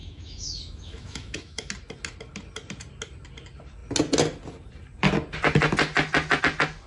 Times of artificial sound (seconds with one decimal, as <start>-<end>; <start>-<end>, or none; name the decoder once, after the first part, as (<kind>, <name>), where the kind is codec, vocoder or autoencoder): 0.0-1.7 (autoencoder, DAC-VAE)